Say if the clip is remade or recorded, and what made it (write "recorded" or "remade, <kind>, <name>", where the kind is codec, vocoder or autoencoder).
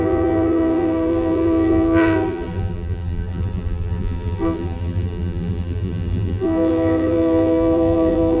remade, vocoder, BigVGAN v2